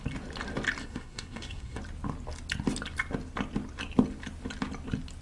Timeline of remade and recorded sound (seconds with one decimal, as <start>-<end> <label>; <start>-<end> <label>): 0.0-0.8 recorded; 0.8-1.8 remade; 1.8-5.2 recorded